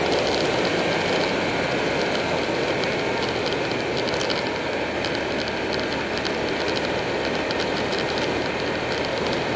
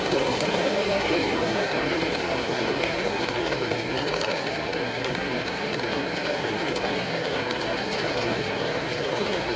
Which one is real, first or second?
first